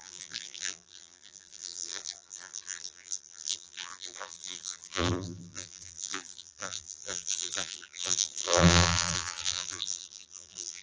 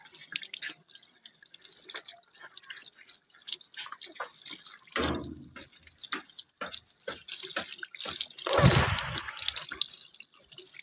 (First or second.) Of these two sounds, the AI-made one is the first